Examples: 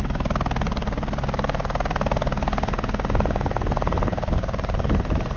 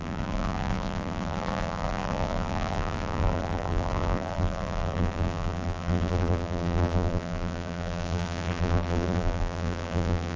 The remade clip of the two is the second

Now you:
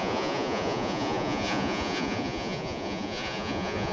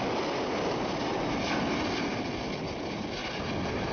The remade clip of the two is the first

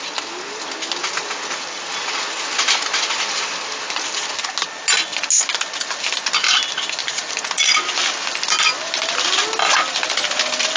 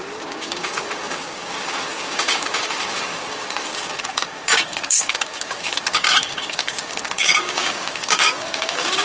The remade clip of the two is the second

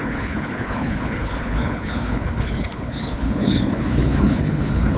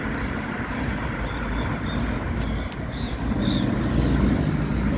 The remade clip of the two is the first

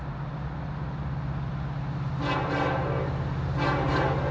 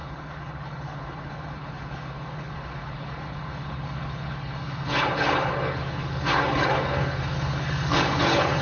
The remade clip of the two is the second